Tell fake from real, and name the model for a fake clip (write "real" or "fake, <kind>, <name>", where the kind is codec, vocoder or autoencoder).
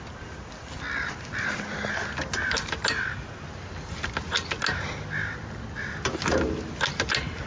real